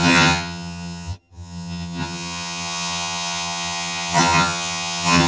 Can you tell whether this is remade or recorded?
remade